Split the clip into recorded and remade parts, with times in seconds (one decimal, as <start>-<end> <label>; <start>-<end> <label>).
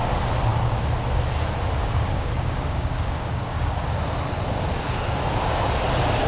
0.0-1.8 recorded; 1.8-4.0 remade; 4.0-6.3 recorded